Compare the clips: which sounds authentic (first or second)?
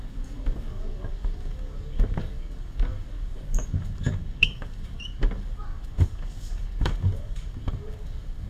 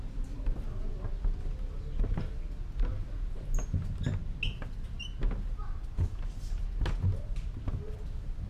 second